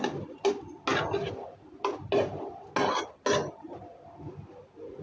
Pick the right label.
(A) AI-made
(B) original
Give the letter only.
B